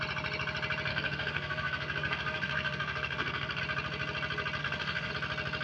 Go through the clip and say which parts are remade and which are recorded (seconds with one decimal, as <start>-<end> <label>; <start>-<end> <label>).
0.0-0.9 recorded; 0.9-3.6 remade; 3.6-4.6 recorded; 4.6-5.1 remade; 5.1-5.6 recorded